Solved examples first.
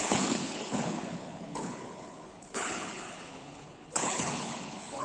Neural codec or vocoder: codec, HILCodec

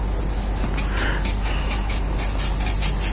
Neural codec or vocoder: none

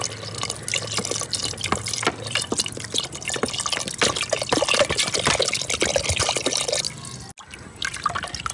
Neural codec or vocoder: none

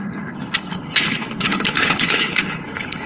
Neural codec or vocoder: codec, HILCodec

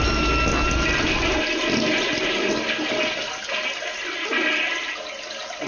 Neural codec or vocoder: none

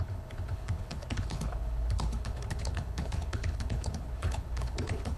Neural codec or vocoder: codec, HILCodec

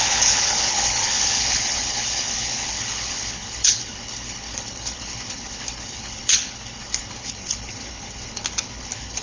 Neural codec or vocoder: codec, HILCodec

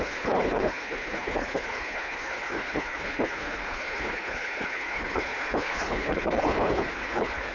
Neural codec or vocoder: codec, HILCodec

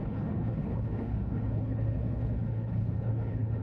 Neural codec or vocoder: codec, HILCodec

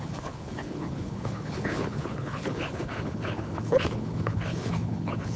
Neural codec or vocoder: codec, HILCodec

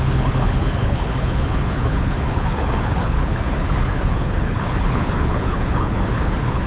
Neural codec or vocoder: codec, HILCodec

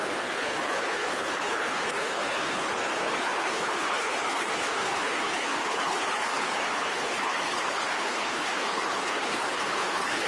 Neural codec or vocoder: codec, HILCodec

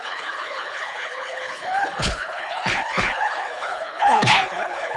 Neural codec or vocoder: codec, HILCodec